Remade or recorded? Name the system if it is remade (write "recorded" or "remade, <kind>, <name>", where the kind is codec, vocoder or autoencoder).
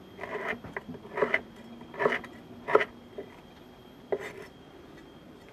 recorded